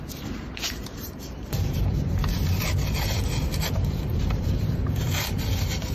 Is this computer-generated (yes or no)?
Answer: yes